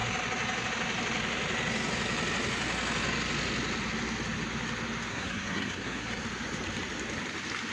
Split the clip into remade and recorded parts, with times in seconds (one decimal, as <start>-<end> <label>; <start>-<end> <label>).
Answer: 0.0-5.1 recorded; 5.1-6.2 remade; 6.2-7.7 recorded